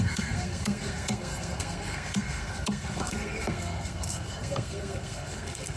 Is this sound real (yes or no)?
no